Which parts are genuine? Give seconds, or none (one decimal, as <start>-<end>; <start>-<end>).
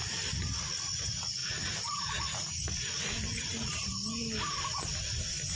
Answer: 0.0-5.6